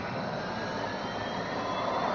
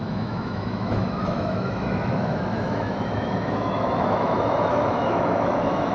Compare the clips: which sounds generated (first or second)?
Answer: second